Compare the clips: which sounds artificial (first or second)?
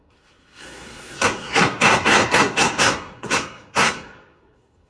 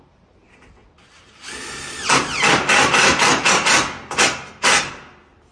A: first